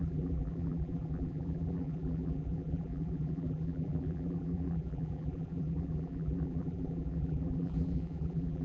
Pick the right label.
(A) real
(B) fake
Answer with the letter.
B